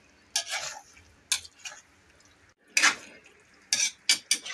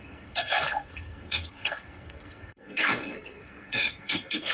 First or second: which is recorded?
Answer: first